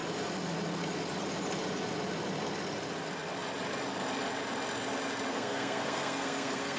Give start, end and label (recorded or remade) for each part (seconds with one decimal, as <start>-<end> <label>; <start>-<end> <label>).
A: 0.0-5.3 recorded; 5.3-6.8 remade